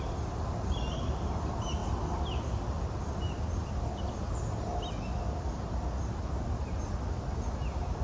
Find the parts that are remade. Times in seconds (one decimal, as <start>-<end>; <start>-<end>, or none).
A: none